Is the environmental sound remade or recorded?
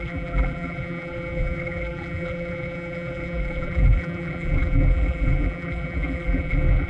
remade